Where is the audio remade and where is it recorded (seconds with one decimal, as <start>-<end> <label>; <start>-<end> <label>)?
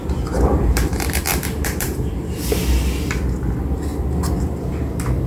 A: 0.0-0.5 recorded; 0.5-2.1 remade; 2.1-5.3 recorded